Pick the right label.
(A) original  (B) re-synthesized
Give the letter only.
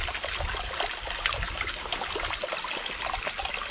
A